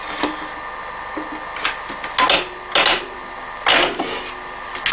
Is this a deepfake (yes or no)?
no